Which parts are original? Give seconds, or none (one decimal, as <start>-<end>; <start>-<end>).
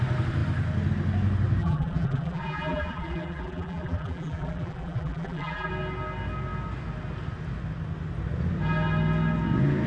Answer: 0.0-1.6; 5.7-9.9